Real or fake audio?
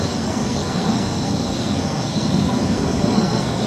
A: fake